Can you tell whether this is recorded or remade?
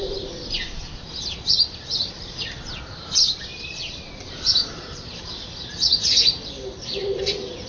remade